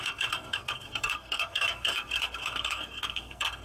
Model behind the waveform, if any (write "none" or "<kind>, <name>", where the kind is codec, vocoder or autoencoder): codec, SNAC